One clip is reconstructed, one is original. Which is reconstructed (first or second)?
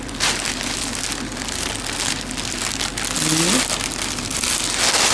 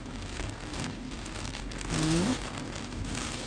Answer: second